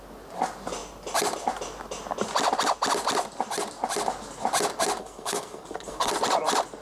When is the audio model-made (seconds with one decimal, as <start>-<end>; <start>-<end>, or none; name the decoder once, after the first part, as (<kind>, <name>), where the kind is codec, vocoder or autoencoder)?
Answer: 5.0-6.1 (codec, SNAC)